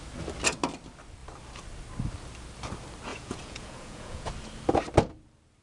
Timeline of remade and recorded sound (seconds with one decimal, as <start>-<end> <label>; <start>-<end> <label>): 0.0-3.1 recorded; 3.1-4.3 remade; 4.3-5.6 recorded